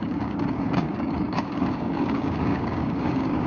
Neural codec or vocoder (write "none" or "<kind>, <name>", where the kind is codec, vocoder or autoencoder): codec, DAC